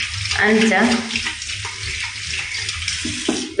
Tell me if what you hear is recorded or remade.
recorded